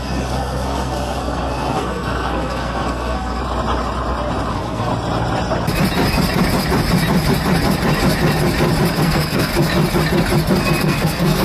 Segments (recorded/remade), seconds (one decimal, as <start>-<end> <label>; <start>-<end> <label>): 0.0-3.4 remade; 3.4-4.5 recorded; 4.5-4.9 remade; 4.9-9.0 recorded; 9.0-9.5 remade; 9.5-10.8 recorded; 10.8-11.4 remade